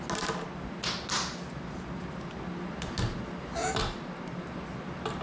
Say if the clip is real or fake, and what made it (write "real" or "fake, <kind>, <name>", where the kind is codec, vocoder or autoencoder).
real